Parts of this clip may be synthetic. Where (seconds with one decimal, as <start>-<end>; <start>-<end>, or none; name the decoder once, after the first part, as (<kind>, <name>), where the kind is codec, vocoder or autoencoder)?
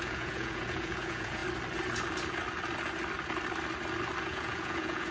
0.0-1.4 (vocoder, Vocos); 4.2-5.1